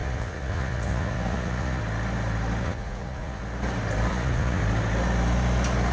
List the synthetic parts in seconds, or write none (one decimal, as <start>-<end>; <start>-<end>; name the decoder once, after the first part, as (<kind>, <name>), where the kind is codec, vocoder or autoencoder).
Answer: 0.0-1.8 (vocoder, Vocos); 2.6-3.4; 4.1-4.6